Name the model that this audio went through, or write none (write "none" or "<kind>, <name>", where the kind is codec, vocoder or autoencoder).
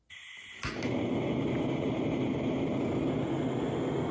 none